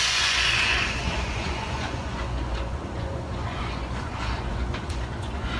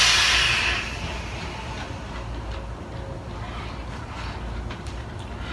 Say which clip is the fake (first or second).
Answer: first